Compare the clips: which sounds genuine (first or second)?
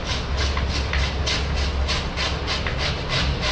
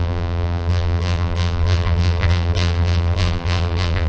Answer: first